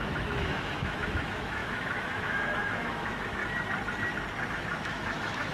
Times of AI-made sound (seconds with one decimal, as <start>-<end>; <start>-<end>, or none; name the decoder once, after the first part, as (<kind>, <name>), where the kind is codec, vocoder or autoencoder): 0.0-3.4 (autoencoder, DAC-VAE); 4.5-5.5